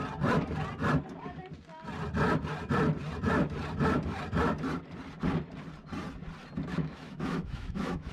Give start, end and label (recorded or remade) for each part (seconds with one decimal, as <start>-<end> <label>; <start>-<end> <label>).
0.0-6.7 recorded; 6.7-8.1 remade